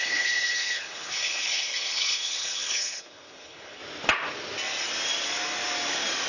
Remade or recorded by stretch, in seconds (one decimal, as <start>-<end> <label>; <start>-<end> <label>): 0.0-3.8 remade; 3.8-6.3 recorded